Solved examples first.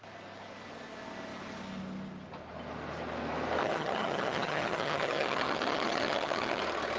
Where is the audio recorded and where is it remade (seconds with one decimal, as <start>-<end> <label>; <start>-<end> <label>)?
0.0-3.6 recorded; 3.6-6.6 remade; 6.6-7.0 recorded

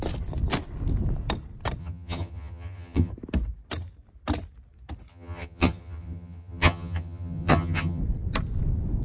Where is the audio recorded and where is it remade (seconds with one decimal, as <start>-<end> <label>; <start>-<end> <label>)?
0.0-1.8 recorded; 1.8-3.1 remade; 3.1-5.1 recorded; 5.1-8.0 remade; 8.0-9.0 recorded

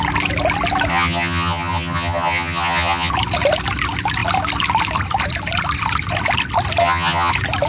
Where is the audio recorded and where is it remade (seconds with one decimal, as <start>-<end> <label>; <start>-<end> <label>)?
0.0-0.9 recorded; 0.9-3.1 remade; 3.1-6.8 recorded; 6.8-7.3 remade; 7.3-7.7 recorded

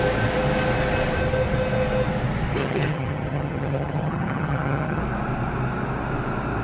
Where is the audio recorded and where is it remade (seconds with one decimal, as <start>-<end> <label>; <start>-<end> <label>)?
0.0-2.6 recorded; 2.6-5.0 remade; 5.0-6.6 recorded

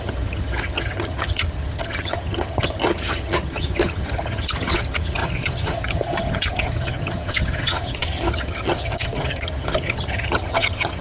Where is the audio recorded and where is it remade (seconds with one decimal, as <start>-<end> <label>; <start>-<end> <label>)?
0.0-11.0 remade

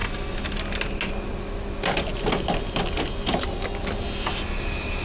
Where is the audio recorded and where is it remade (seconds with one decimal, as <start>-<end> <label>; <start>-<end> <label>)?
0.0-5.0 recorded